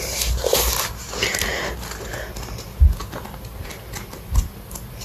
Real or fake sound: real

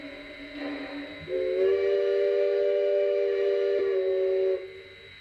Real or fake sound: real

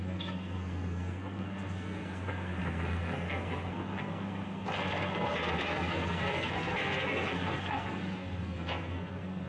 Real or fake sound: fake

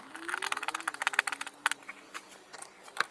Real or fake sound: real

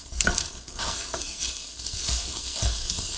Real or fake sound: fake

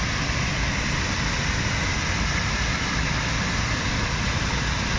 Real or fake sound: real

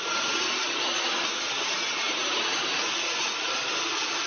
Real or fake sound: real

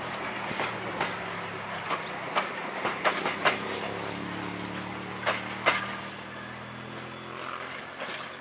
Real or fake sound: real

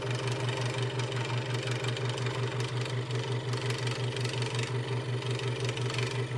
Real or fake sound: real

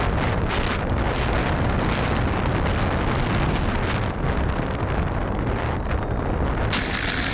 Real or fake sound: real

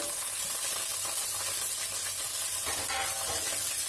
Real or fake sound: real